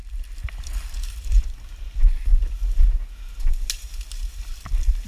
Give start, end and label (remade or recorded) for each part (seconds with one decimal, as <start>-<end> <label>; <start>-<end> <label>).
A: 0.0-5.1 recorded